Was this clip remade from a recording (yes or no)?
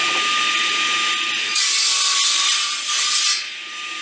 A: no